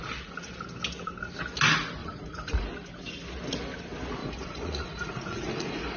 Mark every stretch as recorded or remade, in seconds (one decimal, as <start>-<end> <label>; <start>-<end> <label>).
0.0-2.0 recorded; 2.0-2.7 remade; 2.7-4.2 recorded; 4.2-6.0 remade